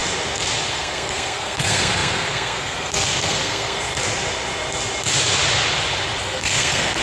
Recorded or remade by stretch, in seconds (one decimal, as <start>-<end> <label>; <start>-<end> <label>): 0.0-0.7 recorded; 0.7-3.9 remade; 3.9-6.2 recorded; 6.2-7.0 remade